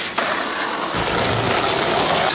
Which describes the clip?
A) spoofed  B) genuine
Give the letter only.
B